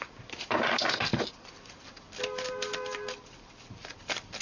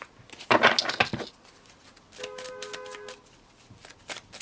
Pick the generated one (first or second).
first